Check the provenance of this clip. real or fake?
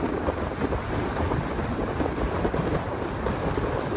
real